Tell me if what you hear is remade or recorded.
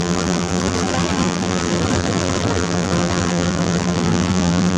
remade